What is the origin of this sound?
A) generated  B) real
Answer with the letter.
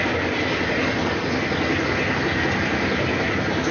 B